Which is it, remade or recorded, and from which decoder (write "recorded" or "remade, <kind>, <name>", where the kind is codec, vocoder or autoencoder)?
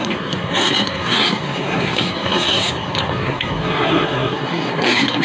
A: remade, codec, SNAC